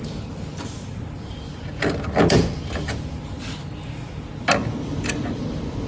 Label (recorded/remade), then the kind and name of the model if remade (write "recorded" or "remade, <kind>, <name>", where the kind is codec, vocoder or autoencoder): recorded